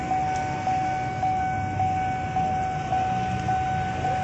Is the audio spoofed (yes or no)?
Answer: no